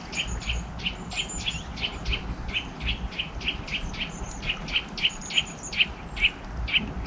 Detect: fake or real real